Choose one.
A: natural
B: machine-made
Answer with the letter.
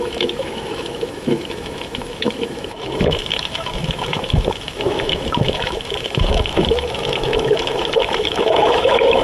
B